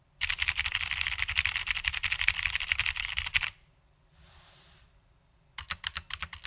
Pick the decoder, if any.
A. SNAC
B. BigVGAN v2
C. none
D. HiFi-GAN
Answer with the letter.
B